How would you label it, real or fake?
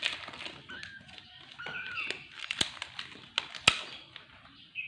real